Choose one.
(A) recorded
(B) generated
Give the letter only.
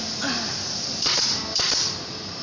A